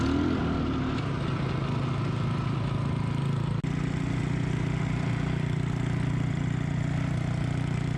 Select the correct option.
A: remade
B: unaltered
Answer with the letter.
B